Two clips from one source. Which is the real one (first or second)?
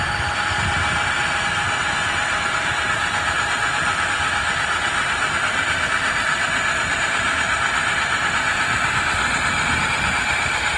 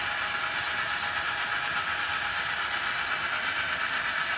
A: second